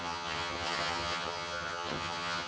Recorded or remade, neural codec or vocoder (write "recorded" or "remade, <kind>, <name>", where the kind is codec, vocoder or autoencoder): remade, vocoder, HiFi-GAN